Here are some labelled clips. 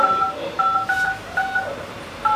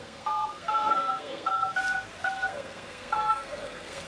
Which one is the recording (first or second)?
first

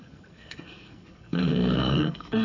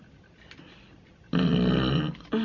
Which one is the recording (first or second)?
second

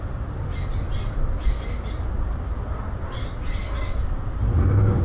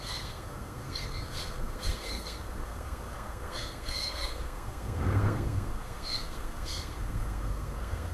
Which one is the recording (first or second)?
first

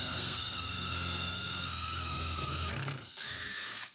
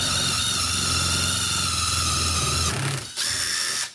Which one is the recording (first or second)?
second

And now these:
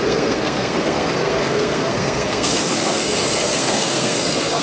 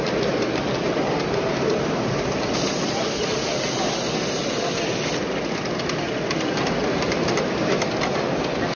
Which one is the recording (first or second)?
second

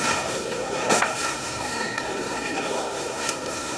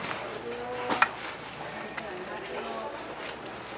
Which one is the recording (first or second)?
second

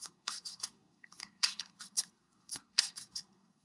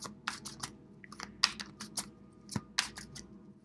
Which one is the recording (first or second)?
second